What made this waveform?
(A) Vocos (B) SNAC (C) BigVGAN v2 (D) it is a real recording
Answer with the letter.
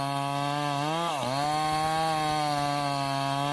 D